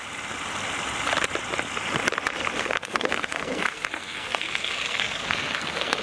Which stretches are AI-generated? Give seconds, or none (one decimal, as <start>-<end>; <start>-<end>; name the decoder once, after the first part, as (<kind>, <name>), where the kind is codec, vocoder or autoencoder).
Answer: 2.6-6.0 (codec, SNAC)